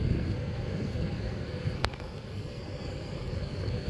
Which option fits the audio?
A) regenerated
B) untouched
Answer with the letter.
A